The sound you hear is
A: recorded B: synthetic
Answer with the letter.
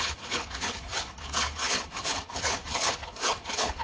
B